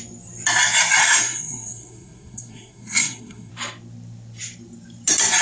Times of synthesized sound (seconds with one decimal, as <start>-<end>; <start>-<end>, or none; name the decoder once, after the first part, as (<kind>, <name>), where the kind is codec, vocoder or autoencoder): 1.0-3.5 (codec, SNAC)